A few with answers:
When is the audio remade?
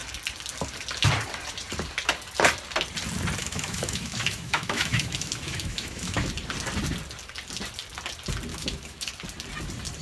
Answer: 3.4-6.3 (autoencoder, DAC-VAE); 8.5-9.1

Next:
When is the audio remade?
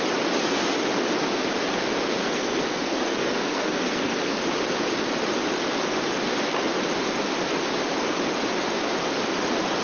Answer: 2.2-4.4 (codec, SNAC)